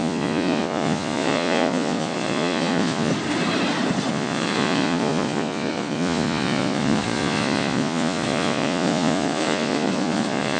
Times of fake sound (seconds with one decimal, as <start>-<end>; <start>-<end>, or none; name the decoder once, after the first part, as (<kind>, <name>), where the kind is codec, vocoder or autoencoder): 0.0-3.1 (vocoder, Vocos); 4.1-10.6